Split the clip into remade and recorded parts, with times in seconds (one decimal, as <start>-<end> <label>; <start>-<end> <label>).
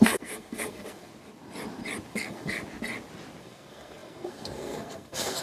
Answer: 0.0-1.1 remade; 1.1-2.1 recorded; 2.1-2.6 remade; 2.6-3.4 recorded; 3.4-5.4 remade